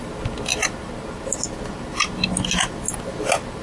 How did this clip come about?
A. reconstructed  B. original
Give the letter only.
B